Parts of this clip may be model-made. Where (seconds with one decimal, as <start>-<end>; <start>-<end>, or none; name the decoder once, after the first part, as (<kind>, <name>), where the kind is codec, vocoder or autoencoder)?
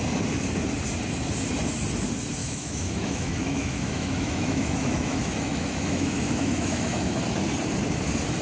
2.4-7.2 (autoencoder, DAC-VAE)